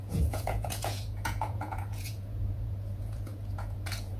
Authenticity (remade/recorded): remade